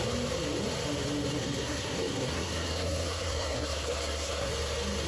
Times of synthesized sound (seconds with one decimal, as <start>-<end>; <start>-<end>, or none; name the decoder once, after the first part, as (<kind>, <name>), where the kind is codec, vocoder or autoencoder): 1.4-4.5 (codec, SNAC)